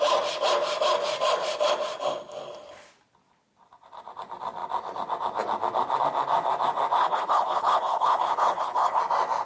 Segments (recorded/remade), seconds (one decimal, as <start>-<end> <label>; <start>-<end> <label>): 0.0-7.0 recorded; 7.0-9.0 remade; 9.0-9.4 recorded